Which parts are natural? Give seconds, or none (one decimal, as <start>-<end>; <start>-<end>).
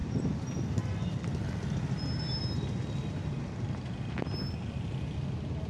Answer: 0.0-5.7